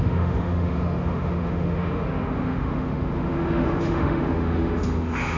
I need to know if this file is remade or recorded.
remade